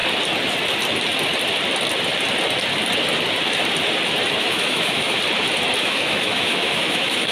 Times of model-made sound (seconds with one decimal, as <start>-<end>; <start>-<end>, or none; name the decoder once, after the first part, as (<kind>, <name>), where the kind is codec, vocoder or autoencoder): 4.4-5.2 (autoencoder, DAC-VAE); 5.8-7.3